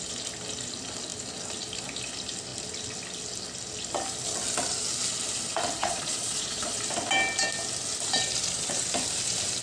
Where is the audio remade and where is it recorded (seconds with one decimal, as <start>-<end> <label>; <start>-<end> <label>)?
0.0-5.8 recorded; 5.8-6.8 remade; 6.8-9.6 recorded

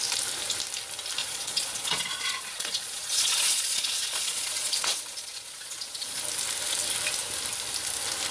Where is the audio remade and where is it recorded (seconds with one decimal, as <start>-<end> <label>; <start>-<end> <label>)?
0.0-1.2 recorded; 1.2-6.2 remade; 6.2-8.3 recorded

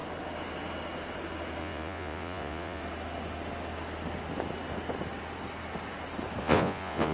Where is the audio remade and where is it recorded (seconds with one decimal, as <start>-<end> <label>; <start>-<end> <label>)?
0.0-1.6 recorded; 1.6-2.8 remade; 2.8-6.4 recorded; 6.4-7.1 remade